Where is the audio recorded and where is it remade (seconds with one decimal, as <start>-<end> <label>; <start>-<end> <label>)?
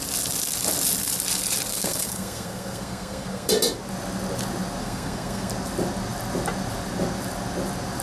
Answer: 0.0-1.7 recorded; 1.7-3.5 remade; 3.5-4.8 recorded; 4.8-5.5 remade; 5.5-8.0 recorded